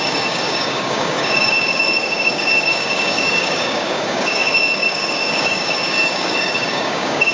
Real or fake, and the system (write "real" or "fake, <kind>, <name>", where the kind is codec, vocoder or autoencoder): fake, codec, DAC